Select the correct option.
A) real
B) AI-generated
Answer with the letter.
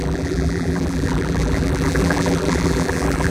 B